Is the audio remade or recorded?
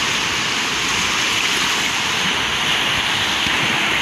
remade